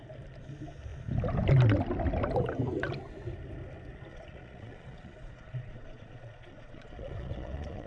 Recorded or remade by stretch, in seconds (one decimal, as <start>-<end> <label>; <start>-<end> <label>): 0.0-4.1 recorded; 4.1-7.9 remade